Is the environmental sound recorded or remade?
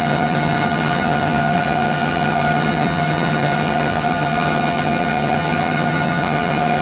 remade